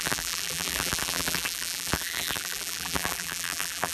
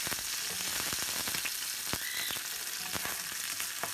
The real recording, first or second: second